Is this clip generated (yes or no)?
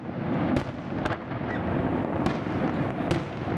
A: no